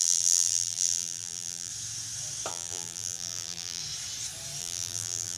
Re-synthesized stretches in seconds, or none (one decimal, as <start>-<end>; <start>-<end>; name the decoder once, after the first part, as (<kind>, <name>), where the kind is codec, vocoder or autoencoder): 0.0-1.7 (vocoder, BigVGAN v2); 2.5-3.8; 4.6-5.4